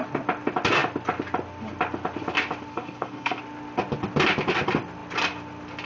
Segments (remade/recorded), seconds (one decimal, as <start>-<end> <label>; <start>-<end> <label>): 0.0-2.7 recorded; 2.7-3.4 remade; 3.4-5.9 recorded